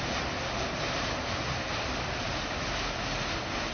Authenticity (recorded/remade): recorded